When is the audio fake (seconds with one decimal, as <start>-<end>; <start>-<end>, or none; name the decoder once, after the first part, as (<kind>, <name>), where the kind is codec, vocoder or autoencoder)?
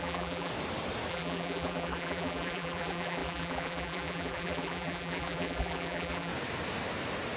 0.0-0.5 (vocoder, BigVGAN v2); 1.1-6.3